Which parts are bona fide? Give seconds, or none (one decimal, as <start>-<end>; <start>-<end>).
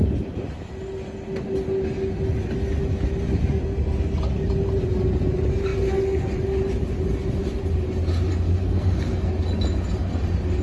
0.0-8.3; 9.3-10.6